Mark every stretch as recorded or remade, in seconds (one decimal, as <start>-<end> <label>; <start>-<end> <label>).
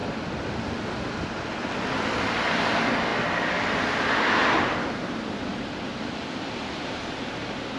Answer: 0.0-0.9 remade; 0.9-3.1 recorded; 3.1-4.2 remade; 4.2-7.8 recorded